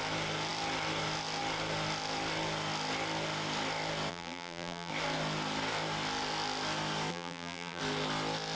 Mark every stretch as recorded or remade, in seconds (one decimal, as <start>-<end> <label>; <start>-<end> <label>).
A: 0.0-4.1 recorded; 4.1-4.9 remade; 4.9-7.1 recorded; 7.1-7.8 remade; 7.8-8.6 recorded